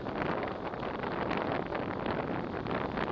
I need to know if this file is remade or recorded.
recorded